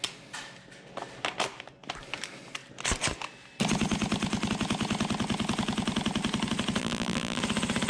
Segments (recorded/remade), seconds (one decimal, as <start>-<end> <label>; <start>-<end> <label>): 0.0-6.8 recorded; 6.8-7.4 remade; 7.4-7.9 recorded